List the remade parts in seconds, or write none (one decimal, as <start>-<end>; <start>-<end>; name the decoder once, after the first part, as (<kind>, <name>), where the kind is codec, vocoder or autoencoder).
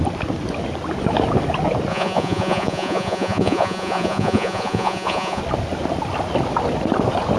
1.9-5.4 (vocoder, Vocos)